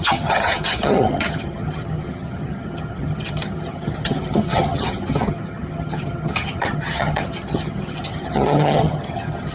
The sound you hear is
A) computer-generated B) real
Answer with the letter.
A